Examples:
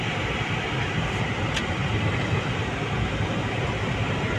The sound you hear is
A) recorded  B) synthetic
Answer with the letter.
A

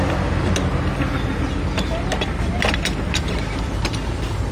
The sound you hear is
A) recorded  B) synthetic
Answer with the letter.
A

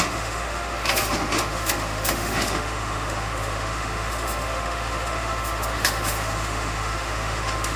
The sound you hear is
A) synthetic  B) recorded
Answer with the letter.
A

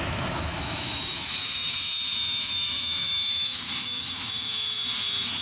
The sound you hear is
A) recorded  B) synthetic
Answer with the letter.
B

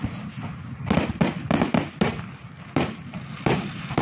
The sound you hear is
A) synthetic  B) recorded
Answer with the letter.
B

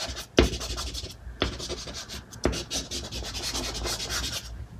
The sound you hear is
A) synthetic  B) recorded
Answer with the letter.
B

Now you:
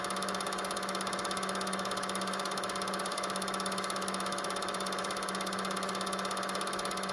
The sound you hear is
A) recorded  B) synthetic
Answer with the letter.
B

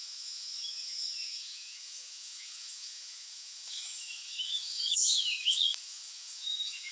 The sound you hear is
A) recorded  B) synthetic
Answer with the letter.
B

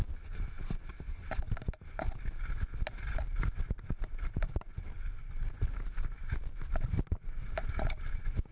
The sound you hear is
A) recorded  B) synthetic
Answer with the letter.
A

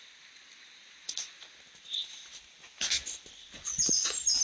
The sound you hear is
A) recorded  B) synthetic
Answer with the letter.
A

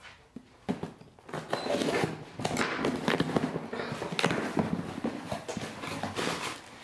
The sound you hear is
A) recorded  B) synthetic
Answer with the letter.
A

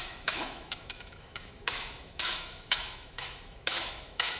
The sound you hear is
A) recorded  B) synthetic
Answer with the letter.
B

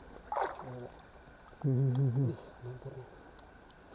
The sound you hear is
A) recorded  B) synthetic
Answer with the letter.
A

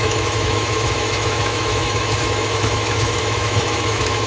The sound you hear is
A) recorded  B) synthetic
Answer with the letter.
B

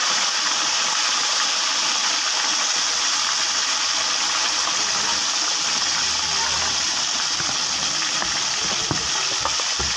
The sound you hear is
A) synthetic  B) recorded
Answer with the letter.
B